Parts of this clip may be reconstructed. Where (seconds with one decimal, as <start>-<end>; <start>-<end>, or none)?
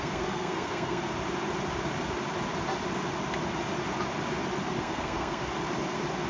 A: 0.0-1.0; 4.8-5.4